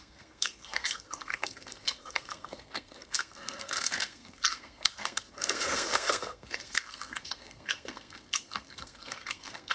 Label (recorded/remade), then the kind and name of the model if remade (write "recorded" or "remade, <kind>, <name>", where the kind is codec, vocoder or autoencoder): remade, codec, SNAC